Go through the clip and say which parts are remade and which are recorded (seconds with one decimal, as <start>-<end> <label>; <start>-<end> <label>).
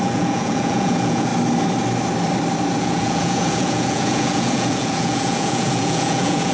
0.0-1.3 remade; 1.3-2.8 recorded; 2.8-6.5 remade